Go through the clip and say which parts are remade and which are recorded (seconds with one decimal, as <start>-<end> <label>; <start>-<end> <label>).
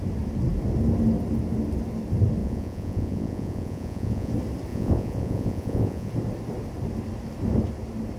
0.0-2.4 recorded; 2.4-4.3 remade; 4.3-4.7 recorded; 4.7-6.1 remade; 6.1-8.2 recorded